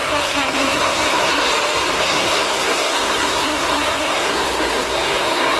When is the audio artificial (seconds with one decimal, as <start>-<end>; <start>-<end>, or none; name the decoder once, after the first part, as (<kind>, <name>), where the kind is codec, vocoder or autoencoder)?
0.0-1.5 (codec, SNAC); 1.9-5.6